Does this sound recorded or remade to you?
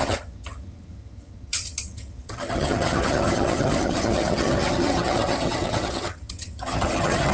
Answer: remade